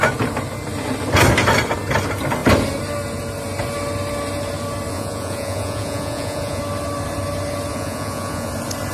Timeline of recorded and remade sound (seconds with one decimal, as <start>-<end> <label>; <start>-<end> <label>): 0.0-4.9 recorded; 4.9-6.6 remade; 6.6-7.7 recorded; 7.7-8.5 remade; 8.5-8.9 recorded